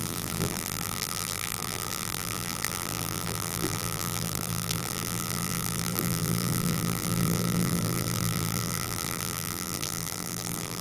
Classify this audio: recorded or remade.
remade